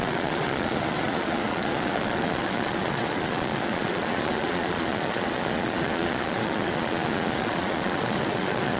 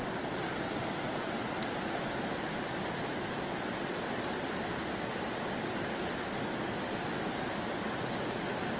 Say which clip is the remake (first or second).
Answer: first